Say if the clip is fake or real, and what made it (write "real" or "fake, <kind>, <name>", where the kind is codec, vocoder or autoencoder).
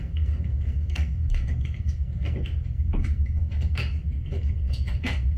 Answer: fake, codec, SNAC